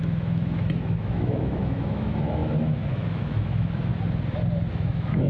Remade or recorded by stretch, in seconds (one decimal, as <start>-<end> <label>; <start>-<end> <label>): 0.0-3.9 remade; 3.9-4.7 recorded; 4.7-5.3 remade